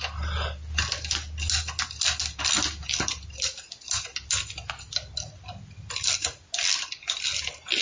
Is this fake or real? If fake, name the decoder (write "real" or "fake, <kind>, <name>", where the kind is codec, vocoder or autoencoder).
real